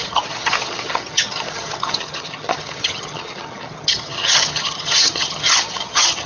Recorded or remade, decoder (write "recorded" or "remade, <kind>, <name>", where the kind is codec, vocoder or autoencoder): remade, vocoder, HiFi-GAN